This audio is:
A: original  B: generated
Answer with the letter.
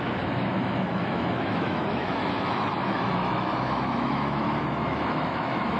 B